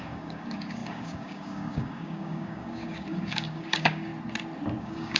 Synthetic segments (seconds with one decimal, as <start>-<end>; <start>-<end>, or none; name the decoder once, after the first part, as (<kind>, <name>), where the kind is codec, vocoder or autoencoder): 0.0-4.1 (codec, DAC); 4.8-5.2